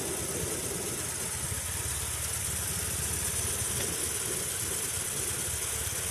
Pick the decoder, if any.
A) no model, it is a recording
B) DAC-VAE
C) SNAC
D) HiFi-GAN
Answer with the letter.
A